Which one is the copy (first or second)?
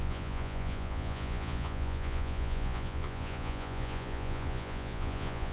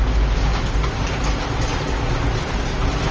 first